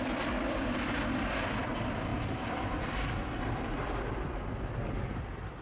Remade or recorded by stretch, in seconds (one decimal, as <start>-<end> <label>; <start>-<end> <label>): 0.0-5.6 recorded